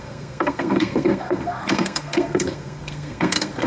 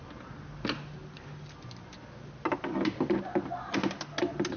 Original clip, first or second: second